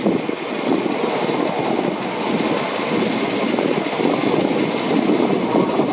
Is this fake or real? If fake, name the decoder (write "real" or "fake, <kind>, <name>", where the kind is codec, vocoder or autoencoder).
real